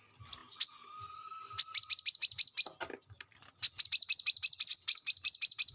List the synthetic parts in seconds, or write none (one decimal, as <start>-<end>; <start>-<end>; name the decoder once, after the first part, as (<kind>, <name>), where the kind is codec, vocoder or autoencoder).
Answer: none